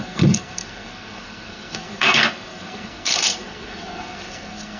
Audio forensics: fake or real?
fake